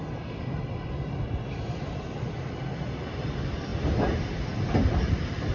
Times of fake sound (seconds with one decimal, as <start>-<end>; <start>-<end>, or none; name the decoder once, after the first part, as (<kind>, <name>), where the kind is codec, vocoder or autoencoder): 3.1-3.7 (vocoder, BigVGAN v2); 5.1-5.5